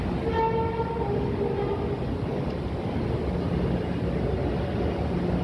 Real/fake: real